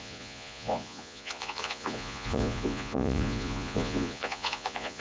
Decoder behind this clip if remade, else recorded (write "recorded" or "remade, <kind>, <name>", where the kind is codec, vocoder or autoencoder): remade, vocoder, Vocos